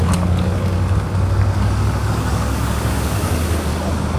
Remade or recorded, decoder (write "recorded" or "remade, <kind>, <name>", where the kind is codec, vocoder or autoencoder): remade, codec, DAC